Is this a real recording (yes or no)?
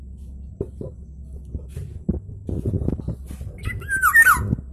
yes